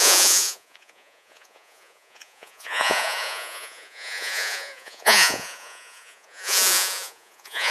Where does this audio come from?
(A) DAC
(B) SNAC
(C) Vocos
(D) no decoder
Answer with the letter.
C